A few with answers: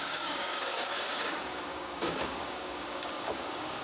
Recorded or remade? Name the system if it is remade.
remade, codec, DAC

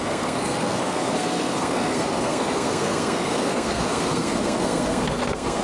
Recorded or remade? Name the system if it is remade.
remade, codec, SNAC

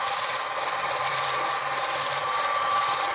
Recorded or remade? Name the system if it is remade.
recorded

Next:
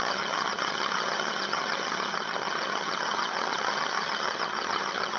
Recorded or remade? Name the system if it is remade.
remade, vocoder, HiFi-GAN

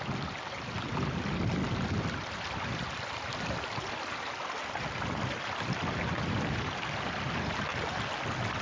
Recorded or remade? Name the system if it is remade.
recorded